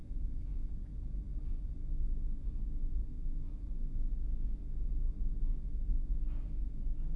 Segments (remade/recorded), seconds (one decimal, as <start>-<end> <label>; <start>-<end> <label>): 0.0-7.2 recorded